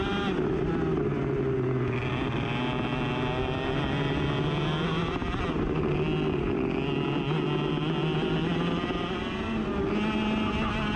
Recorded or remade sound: recorded